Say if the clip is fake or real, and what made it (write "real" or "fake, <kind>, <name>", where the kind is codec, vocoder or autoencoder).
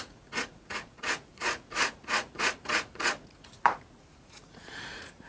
fake, vocoder, Vocos